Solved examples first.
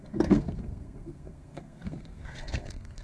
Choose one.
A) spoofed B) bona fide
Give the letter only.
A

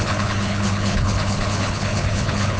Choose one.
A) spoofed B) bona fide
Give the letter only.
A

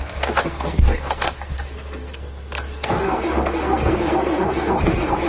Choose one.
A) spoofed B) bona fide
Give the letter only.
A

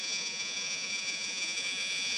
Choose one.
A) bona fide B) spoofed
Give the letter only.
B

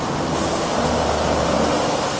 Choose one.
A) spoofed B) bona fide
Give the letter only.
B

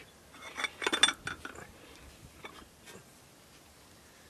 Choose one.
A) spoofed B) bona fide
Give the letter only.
B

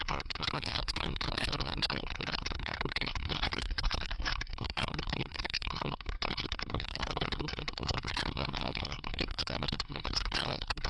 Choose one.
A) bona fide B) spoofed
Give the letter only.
B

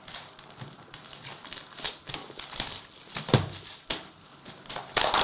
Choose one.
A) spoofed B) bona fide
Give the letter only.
B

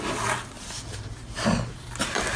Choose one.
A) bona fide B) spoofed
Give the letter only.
A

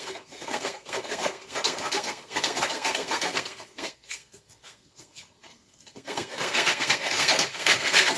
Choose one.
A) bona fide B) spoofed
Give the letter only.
B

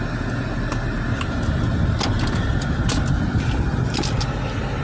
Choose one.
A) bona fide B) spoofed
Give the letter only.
A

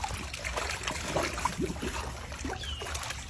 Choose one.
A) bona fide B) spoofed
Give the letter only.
A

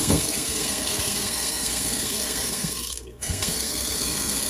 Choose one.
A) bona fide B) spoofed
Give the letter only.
B